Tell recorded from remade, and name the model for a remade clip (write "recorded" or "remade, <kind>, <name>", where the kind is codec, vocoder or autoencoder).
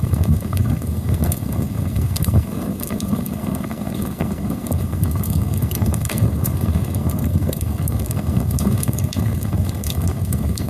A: remade, codec, SNAC